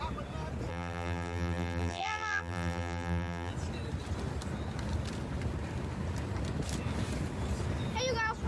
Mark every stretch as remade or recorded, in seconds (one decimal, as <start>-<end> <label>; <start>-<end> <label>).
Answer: 0.0-0.7 recorded; 0.7-3.5 remade; 3.5-8.5 recorded